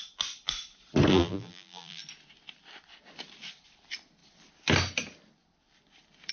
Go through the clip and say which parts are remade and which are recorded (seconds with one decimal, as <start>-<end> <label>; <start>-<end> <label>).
0.0-1.1 recorded; 1.1-2.0 remade; 2.0-6.3 recorded